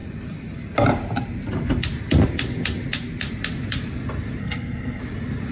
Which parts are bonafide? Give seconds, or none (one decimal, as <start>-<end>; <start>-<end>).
0.0-4.4; 5.0-5.5